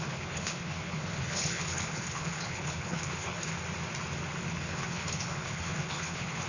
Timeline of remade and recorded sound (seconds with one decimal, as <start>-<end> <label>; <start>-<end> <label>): 0.0-3.5 remade; 3.5-4.5 recorded; 4.5-6.5 remade

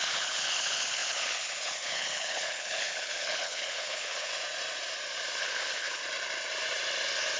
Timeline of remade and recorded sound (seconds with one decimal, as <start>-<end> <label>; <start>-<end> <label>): 0.0-4.3 remade; 4.3-5.4 recorded; 5.4-6.0 remade; 6.0-7.4 recorded

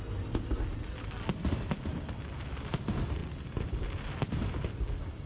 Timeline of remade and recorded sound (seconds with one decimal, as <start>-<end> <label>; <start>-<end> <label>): 0.0-5.3 recorded

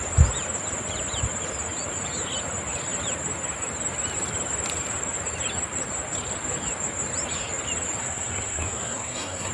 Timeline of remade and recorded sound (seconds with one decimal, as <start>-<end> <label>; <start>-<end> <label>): 0.0-8.0 recorded; 8.0-9.5 remade

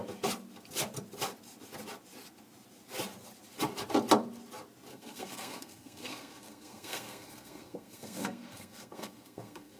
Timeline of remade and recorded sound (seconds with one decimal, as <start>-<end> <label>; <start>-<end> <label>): 0.0-4.9 recorded; 4.9-9.8 remade

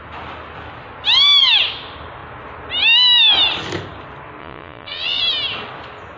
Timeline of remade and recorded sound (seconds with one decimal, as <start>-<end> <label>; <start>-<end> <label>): 0.0-4.4 recorded; 4.4-5.2 remade; 5.2-6.2 recorded

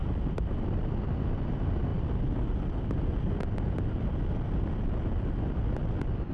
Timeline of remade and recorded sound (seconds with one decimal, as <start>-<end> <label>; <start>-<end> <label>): 0.0-6.3 recorded